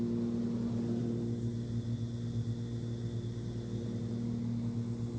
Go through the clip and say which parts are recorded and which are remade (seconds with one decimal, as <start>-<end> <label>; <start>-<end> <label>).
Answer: 0.0-5.2 recorded